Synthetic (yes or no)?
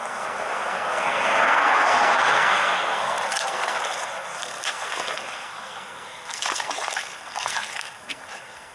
yes